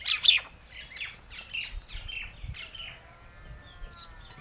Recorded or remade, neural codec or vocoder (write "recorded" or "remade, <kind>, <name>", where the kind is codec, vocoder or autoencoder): recorded